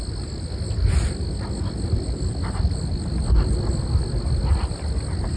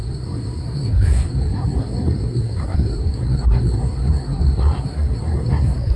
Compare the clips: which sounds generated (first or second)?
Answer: second